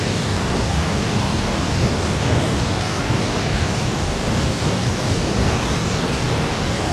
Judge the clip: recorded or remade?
remade